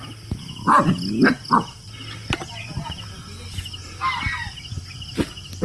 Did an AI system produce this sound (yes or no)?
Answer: no